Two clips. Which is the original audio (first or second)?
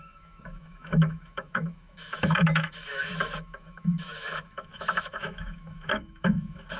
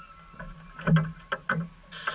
second